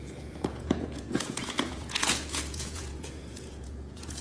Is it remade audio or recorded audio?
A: remade